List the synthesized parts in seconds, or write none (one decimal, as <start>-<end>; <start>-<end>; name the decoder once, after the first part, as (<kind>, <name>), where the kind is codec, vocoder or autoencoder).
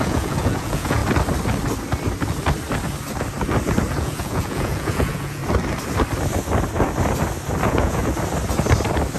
0.0-1.0 (vocoder, Vocos); 4.0-5.4; 7.6-8.0